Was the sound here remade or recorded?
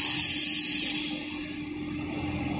recorded